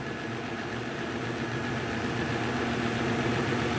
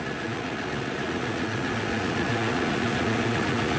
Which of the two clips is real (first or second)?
first